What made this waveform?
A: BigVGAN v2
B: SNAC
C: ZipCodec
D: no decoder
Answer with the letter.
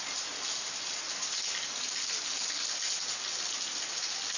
D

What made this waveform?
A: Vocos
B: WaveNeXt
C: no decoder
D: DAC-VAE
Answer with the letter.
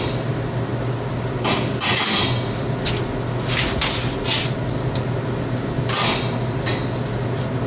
C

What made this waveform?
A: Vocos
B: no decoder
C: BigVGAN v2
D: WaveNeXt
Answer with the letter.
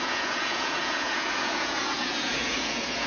A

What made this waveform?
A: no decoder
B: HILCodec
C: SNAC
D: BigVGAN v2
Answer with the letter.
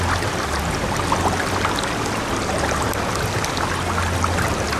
A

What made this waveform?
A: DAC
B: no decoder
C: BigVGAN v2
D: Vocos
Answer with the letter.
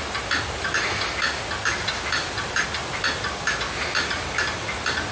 B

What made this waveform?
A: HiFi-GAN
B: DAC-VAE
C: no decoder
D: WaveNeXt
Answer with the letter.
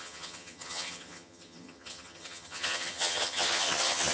A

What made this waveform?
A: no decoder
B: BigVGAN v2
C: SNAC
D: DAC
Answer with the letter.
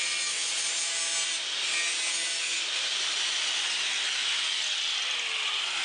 A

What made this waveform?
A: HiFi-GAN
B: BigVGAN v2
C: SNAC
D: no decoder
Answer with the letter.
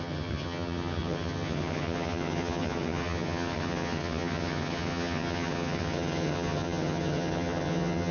A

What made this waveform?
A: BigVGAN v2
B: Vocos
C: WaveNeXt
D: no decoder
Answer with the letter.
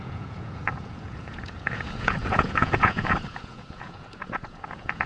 B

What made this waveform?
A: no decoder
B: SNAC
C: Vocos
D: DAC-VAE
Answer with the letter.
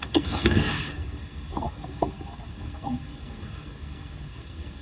B